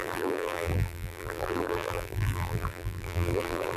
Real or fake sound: fake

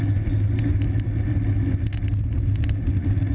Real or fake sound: real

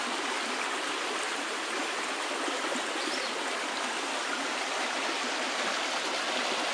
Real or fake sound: real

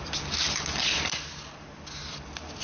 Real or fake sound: real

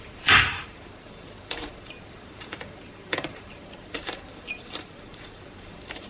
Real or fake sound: fake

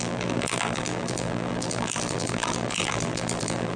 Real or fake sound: fake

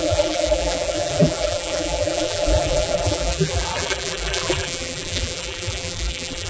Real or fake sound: fake